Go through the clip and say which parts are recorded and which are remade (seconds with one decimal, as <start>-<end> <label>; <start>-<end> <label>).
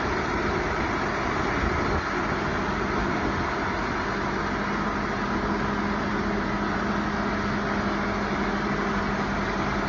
0.0-9.9 recorded